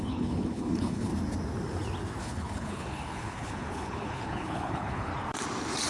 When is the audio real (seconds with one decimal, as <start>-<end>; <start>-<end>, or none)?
1.1-2.2; 5.1-5.9